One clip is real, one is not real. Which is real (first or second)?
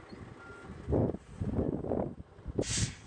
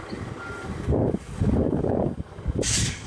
first